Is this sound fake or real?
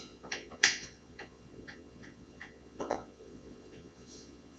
fake